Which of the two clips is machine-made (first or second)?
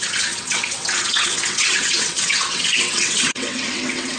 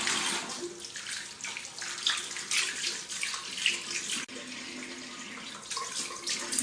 first